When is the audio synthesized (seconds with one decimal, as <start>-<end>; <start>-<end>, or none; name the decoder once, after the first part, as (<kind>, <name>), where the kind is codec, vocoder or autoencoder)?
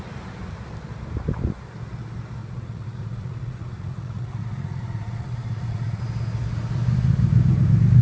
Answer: 2.4-6.0 (vocoder, Vocos)